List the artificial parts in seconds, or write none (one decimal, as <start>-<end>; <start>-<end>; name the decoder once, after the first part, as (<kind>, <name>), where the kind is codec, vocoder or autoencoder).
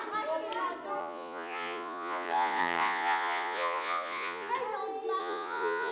1.0-4.5 (vocoder, Vocos); 5.2-5.9